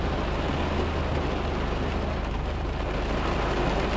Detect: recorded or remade recorded